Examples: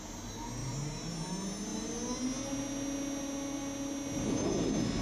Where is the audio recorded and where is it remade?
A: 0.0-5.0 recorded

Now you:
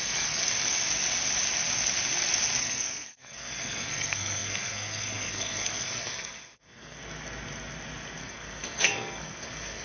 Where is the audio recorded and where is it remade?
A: 0.0-0.4 remade; 0.4-2.6 recorded; 2.6-7.0 remade; 7.0-8.2 recorded; 8.2-9.8 remade

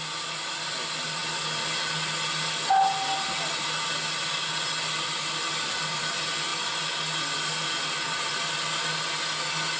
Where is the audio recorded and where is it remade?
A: 0.0-9.8 recorded

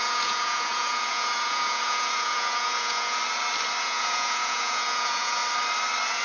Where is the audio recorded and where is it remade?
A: 0.0-3.2 remade; 3.2-3.8 recorded; 3.8-5.4 remade; 5.4-6.2 recorded

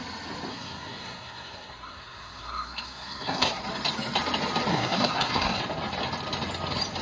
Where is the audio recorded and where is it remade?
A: 0.0-0.5 recorded; 0.5-3.6 remade; 3.6-4.7 recorded; 4.7-5.6 remade; 5.6-7.0 recorded

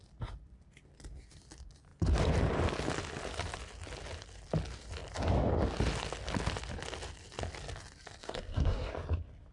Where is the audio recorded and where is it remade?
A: 0.0-8.2 recorded; 8.2-8.9 remade; 8.9-9.5 recorded

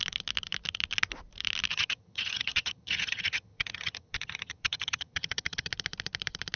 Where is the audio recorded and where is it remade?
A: 0.0-1.7 recorded; 1.7-5.7 remade; 5.7-6.6 recorded